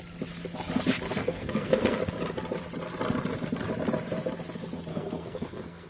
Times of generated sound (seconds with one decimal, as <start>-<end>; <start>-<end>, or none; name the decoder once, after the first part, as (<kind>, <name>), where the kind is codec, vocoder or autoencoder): 1.2-2.0 (codec, SNAC); 4.9-5.9